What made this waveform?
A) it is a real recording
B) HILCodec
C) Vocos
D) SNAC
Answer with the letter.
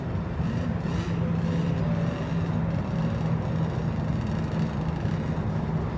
A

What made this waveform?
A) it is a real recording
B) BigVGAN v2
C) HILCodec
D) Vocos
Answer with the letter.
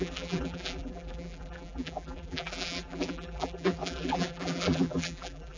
B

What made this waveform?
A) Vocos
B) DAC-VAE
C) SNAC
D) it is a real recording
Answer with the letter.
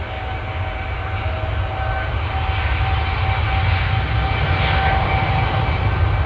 D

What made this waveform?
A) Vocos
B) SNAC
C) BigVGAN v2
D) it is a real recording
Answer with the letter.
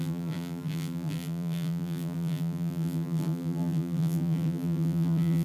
C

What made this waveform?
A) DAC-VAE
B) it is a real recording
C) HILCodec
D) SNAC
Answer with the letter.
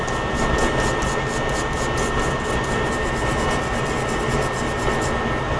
B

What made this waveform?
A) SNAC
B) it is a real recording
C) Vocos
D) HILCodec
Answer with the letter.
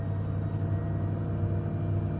B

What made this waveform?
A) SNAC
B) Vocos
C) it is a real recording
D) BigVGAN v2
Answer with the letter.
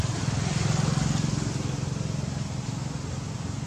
C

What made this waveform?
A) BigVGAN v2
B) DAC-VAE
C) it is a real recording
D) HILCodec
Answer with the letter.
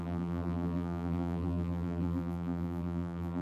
A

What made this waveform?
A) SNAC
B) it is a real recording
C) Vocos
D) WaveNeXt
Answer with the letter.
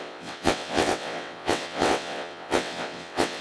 D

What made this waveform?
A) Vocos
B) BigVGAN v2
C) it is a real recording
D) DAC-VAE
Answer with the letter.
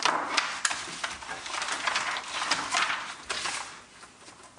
C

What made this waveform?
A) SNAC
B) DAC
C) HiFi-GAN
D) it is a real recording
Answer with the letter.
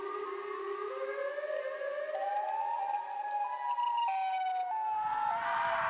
D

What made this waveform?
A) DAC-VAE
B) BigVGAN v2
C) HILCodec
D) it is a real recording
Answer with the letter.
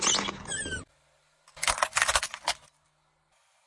D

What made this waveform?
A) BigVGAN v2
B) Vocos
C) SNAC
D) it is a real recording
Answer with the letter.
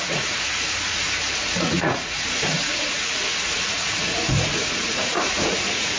B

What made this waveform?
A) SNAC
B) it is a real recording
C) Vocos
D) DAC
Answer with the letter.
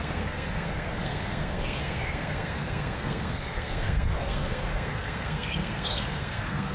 A